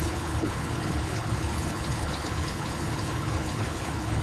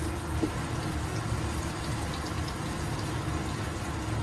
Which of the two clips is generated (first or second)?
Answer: first